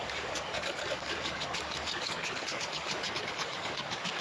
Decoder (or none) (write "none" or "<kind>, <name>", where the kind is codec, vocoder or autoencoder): codec, DAC